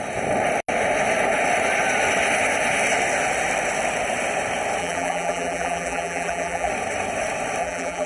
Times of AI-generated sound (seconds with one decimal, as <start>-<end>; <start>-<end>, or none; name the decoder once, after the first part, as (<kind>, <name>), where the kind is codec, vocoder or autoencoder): 4.8-6.7 (vocoder, BigVGAN v2); 7.6-8.1